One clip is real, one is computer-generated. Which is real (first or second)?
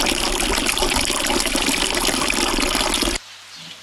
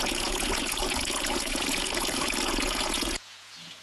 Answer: first